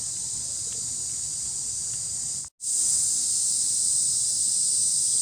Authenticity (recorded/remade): recorded